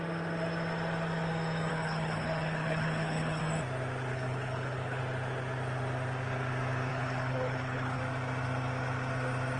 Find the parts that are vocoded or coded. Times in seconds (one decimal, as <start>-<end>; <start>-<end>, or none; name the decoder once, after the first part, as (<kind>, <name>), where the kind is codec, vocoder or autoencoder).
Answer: 1.7-3.4 (codec, HILCodec); 4.1-5.0; 6.9-8.0